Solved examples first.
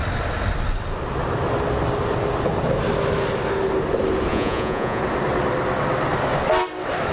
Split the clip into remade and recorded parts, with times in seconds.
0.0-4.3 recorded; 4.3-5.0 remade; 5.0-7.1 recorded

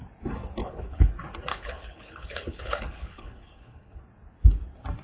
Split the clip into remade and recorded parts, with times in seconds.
0.0-0.6 recorded; 0.6-1.1 remade; 1.1-1.5 recorded; 1.5-4.0 remade; 4.0-5.0 recorded

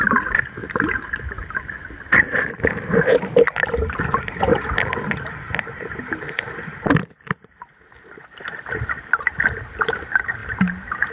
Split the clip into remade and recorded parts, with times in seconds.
0.0-11.1 recorded

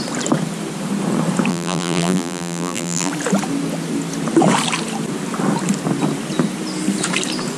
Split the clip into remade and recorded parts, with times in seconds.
0.0-1.5 recorded; 1.5-3.1 remade; 3.1-7.6 recorded

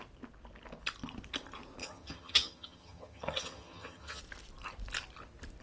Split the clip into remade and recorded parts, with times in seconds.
0.0-1.8 recorded; 1.8-4.2 remade; 4.2-5.6 recorded

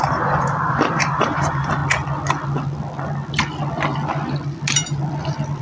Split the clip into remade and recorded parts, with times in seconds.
0.0-1.8 remade; 1.8-5.6 recorded

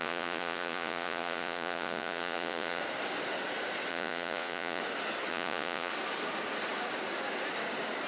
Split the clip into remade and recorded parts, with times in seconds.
0.0-2.8 remade; 2.8-3.9 recorded; 3.9-4.8 remade; 4.8-5.3 recorded; 5.3-5.9 remade; 5.9-8.1 recorded

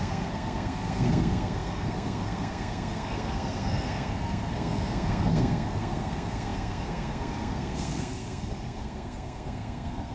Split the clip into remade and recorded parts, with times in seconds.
0.0-10.1 remade